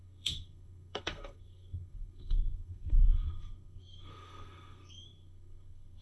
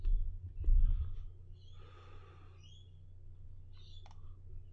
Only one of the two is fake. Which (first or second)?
first